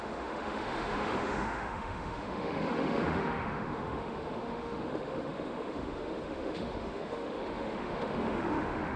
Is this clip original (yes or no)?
no